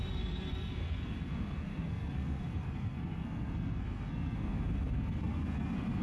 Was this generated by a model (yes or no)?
yes